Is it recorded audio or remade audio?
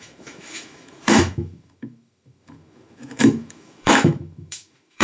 remade